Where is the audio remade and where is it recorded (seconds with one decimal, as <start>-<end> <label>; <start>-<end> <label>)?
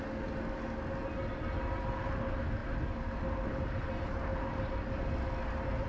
0.0-5.9 recorded